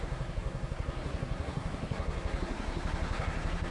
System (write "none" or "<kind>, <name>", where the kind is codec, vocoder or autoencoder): codec, SNAC